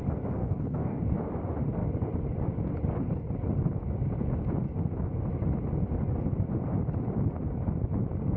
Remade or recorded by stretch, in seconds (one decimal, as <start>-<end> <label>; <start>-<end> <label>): 0.0-0.4 recorded; 0.4-1.0 remade; 1.0-8.4 recorded